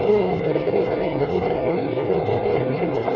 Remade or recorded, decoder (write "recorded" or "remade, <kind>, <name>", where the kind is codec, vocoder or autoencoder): remade, codec, SNAC